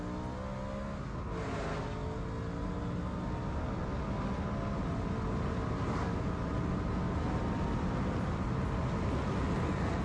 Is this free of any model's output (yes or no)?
yes